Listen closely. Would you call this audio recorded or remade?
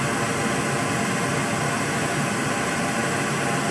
recorded